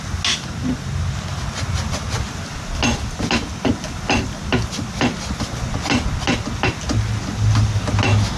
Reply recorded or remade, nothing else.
recorded